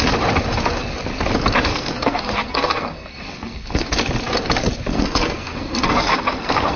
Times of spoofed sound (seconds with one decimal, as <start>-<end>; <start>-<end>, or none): 1.7-3.9; 4.9-6.8